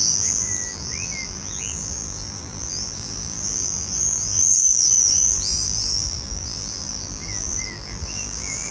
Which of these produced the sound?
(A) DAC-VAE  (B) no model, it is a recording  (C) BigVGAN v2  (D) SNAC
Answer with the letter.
C